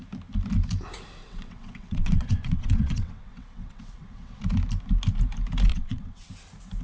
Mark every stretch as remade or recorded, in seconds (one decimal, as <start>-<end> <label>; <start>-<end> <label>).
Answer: 0.0-1.2 recorded; 1.2-4.4 remade; 4.4-5.7 recorded; 5.7-6.3 remade; 6.3-6.8 recorded